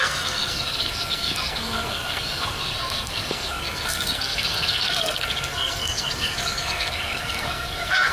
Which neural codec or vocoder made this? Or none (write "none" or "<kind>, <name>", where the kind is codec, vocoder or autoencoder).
codec, SNAC